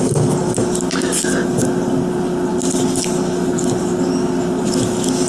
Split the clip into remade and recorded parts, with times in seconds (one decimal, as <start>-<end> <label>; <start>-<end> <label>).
0.0-5.3 recorded